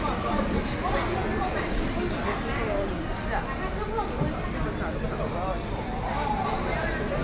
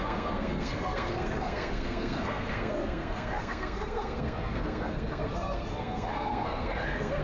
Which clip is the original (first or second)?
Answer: first